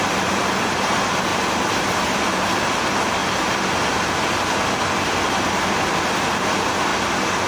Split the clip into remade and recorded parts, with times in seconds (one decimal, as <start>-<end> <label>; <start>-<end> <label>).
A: 0.0-3.2 remade; 3.2-6.2 recorded; 6.2-6.9 remade; 6.9-7.5 recorded